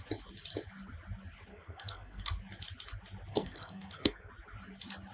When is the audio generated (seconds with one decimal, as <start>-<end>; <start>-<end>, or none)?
1.5-2.3; 3.3-4.3

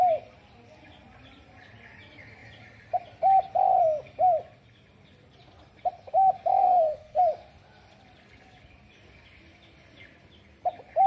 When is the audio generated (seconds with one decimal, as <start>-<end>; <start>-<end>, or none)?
6.6-7.2

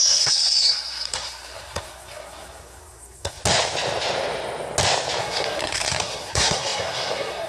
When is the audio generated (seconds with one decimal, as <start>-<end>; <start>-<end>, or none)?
0.0-3.4; 5.2-7.5

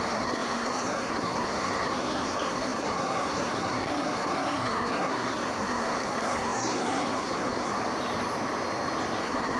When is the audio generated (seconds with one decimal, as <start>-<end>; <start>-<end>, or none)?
0.0-7.7; 9.2-9.6

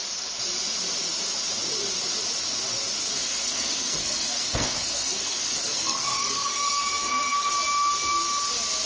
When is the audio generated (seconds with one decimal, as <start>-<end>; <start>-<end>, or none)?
3.1-7.5

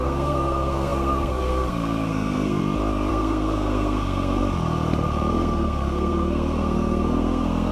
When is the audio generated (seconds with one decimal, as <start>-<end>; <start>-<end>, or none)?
0.0-2.6; 3.1-4.4; 5.3-7.7

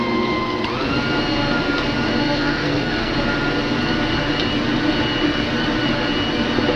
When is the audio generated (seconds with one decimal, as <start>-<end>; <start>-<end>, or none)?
2.2-3.1